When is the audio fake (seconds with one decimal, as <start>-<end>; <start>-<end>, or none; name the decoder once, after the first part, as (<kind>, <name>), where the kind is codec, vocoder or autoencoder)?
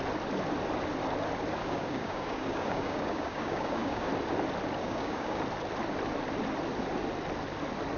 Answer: 1.6-4.1 (codec, DAC); 4.8-5.4